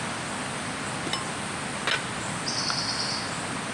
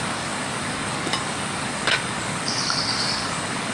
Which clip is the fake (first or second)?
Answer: second